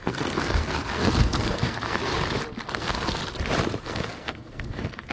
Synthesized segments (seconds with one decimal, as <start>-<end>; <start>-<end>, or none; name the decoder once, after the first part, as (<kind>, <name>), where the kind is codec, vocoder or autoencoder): 0.0-2.1 (codec, SNAC); 2.7-3.2; 3.8-5.1